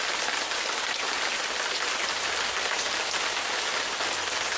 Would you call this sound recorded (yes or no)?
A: yes